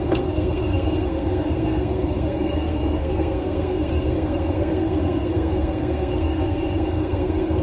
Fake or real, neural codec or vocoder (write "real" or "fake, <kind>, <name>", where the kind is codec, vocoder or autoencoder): fake, codec, SNAC